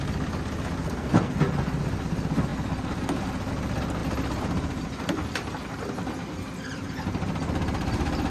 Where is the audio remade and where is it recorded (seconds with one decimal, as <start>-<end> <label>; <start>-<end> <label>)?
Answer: 0.0-0.8 recorded; 0.8-1.3 remade; 1.3-8.3 recorded